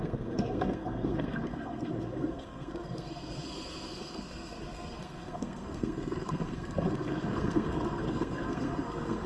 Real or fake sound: fake